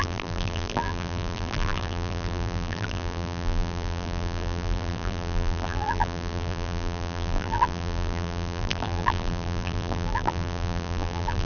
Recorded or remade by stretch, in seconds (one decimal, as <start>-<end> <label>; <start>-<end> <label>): 0.0-11.4 remade

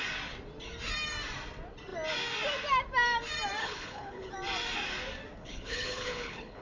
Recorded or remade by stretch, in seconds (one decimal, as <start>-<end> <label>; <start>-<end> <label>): 0.0-3.6 recorded; 3.6-4.3 remade; 4.3-5.4 recorded; 5.4-6.6 remade

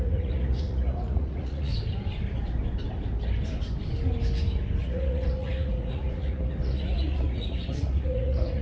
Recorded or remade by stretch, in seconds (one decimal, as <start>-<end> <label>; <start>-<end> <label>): 0.0-1.7 remade; 1.7-4.8 recorded; 4.8-8.6 remade

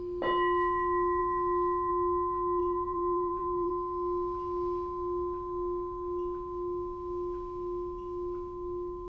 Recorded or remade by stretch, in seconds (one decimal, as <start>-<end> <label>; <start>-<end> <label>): 0.0-2.6 recorded; 2.6-3.7 remade; 3.7-9.1 recorded